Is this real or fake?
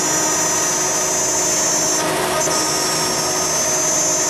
real